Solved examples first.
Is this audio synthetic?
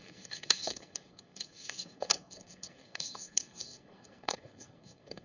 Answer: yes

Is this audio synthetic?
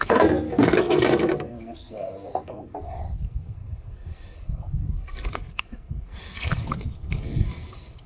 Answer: yes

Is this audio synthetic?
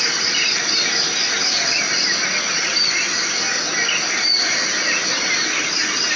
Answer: no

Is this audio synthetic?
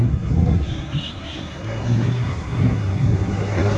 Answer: yes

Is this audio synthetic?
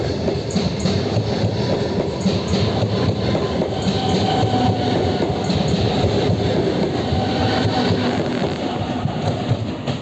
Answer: no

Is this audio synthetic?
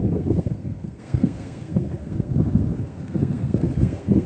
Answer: yes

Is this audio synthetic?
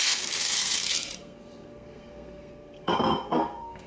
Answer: yes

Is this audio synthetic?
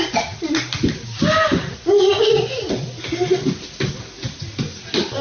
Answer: no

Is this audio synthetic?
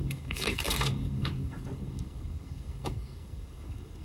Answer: yes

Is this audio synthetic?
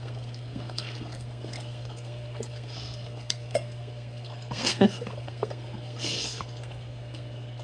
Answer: yes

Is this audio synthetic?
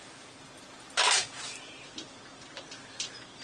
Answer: no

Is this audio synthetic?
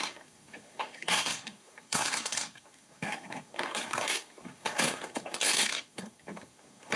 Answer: yes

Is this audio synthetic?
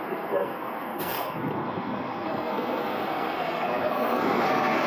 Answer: yes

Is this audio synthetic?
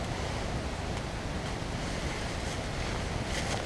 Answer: no